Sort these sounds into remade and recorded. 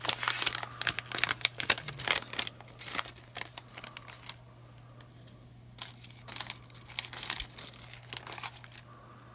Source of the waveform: recorded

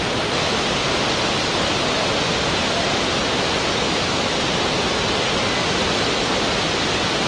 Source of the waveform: recorded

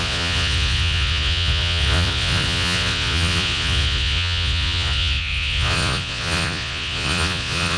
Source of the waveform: remade